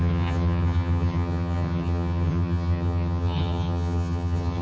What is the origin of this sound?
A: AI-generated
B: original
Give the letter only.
A